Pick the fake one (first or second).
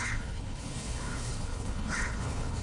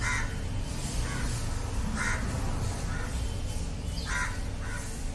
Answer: first